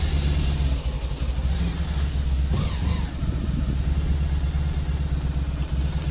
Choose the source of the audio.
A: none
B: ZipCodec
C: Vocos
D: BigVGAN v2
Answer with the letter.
A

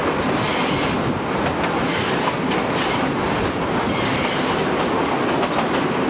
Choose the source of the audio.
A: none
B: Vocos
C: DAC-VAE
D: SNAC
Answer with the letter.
A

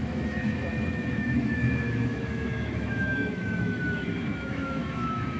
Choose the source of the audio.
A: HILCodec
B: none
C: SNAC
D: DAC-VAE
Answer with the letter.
D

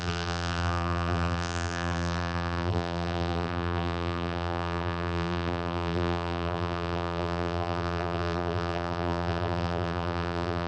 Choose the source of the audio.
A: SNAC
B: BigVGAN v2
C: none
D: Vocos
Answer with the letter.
B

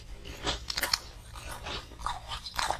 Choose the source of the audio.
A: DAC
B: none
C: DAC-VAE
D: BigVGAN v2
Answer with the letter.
B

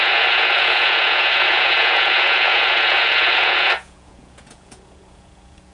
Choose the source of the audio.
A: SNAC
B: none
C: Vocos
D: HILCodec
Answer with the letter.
C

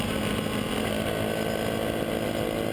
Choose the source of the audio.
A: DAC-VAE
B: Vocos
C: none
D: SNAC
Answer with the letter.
C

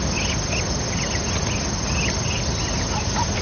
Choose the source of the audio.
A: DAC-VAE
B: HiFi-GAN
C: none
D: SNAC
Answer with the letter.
C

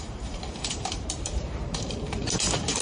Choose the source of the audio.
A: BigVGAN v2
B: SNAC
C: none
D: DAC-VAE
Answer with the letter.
A